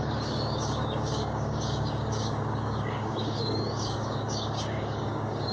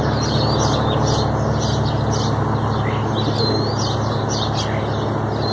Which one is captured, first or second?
second